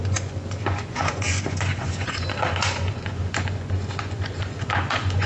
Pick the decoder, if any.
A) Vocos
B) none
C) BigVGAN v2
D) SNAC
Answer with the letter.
A